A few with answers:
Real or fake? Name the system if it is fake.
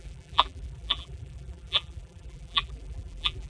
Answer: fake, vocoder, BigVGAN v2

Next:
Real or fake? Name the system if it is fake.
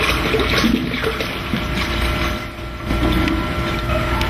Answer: real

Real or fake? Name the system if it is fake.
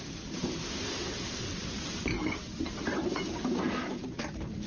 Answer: fake, vocoder, BigVGAN v2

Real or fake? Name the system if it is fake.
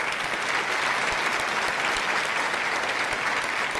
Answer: real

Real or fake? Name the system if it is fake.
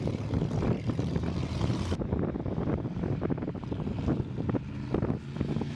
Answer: real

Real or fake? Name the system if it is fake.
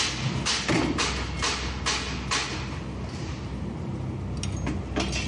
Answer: real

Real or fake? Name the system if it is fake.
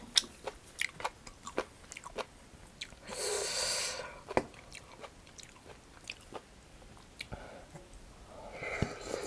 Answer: real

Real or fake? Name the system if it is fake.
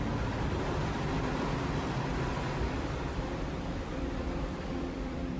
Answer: fake, vocoder, BigVGAN v2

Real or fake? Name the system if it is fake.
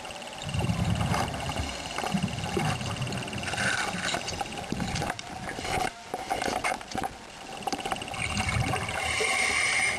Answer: fake, vocoder, BigVGAN v2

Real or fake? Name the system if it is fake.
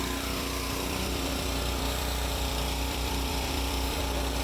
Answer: fake, vocoder, BigVGAN v2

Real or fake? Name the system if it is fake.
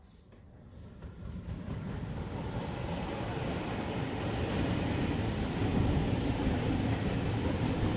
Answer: fake, vocoder, BigVGAN v2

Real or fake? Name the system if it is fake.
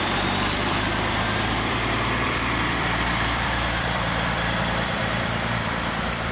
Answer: fake, vocoder, BigVGAN v2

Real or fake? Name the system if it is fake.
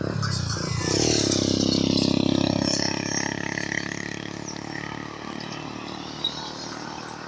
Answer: real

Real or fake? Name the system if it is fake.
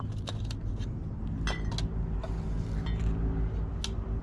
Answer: real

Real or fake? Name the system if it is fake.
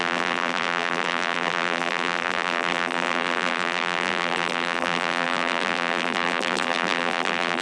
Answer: fake, vocoder, BigVGAN v2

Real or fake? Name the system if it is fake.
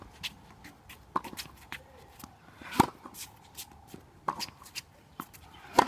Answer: fake, vocoder, BigVGAN v2